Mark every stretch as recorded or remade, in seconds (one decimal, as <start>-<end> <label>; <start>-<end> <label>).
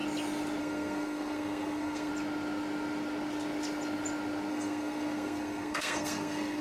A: 0.0-0.6 recorded; 0.6-2.1 remade; 2.1-4.5 recorded; 4.5-6.6 remade